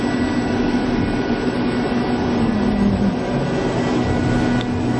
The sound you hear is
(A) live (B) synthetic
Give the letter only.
A